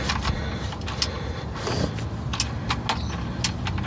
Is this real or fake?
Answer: real